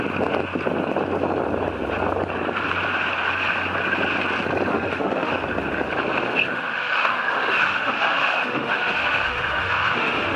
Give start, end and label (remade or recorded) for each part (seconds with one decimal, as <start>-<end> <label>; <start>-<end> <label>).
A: 0.0-4.7 recorded; 4.7-5.3 remade; 5.3-6.5 recorded; 6.5-10.4 remade